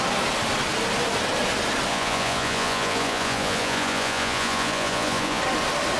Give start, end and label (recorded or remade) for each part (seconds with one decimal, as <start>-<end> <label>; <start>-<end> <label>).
0.0-1.9 recorded; 1.9-5.4 remade; 5.4-6.0 recorded